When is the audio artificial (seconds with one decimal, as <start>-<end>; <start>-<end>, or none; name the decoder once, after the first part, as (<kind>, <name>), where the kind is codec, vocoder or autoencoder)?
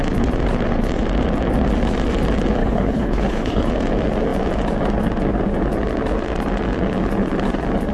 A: 2.6-3.7 (codec, HILCodec)